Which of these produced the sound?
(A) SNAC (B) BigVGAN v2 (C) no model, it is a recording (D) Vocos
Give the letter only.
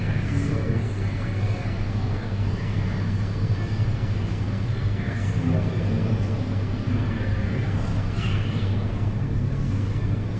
A